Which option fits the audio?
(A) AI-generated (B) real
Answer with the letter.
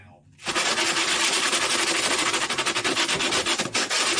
B